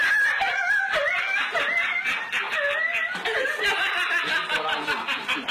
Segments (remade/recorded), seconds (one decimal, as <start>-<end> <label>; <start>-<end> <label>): 0.0-5.5 recorded